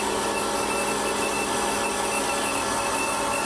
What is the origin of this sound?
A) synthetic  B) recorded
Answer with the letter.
B